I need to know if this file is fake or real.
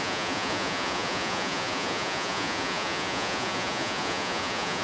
fake